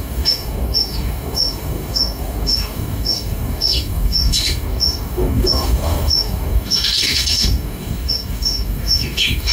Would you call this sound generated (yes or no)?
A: yes